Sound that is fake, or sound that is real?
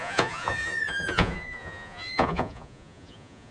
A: fake